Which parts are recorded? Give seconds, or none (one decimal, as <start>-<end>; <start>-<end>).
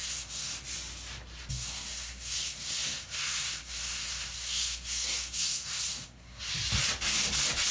0.5-1.5; 6.5-7.7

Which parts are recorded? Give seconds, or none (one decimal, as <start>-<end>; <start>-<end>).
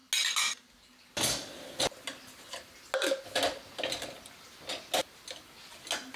0.0-6.2